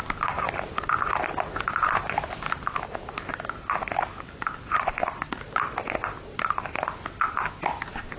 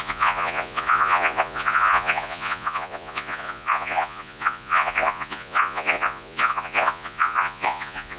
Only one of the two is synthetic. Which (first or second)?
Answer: second